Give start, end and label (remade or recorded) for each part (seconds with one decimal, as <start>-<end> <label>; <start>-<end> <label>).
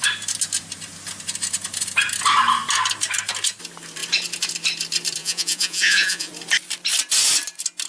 0.0-5.2 recorded; 5.2-6.3 remade; 6.3-7.9 recorded